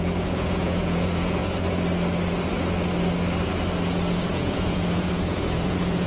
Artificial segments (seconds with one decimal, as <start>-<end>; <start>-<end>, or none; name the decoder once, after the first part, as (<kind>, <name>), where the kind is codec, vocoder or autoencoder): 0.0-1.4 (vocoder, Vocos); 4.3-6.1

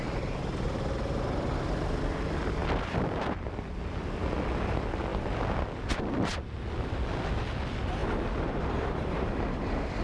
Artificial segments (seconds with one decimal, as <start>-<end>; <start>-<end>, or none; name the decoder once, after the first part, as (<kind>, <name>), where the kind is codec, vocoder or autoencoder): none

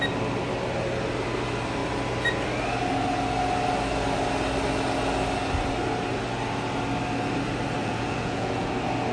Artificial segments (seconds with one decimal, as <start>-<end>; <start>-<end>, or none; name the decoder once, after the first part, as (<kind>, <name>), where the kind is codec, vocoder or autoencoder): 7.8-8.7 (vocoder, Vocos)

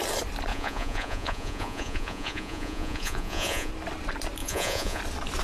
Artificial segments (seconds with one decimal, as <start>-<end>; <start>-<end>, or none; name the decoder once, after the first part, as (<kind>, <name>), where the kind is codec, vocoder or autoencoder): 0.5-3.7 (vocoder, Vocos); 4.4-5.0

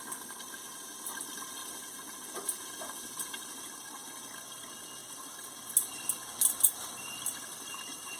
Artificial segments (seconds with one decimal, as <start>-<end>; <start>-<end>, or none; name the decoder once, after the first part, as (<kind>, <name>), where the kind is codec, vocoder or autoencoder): 1.6-3.5 (vocoder, Vocos)

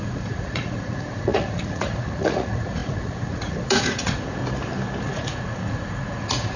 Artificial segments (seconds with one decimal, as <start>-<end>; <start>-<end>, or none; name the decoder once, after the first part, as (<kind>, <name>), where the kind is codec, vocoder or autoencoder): 0.0-4.4 (vocoder, Vocos); 5.0-6.6

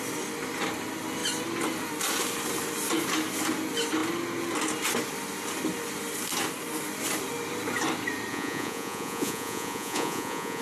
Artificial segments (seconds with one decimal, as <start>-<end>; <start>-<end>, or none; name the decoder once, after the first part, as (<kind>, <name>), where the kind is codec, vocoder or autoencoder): 8.3-10.6 (vocoder, Vocos)